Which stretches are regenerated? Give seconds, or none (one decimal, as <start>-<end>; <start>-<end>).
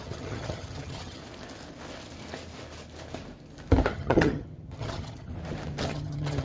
0.0-1.2; 3.9-5.3; 5.8-6.4